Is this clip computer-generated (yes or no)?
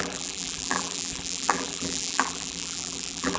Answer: yes